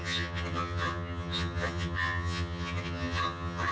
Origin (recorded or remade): remade